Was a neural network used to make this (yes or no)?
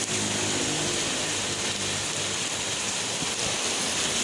no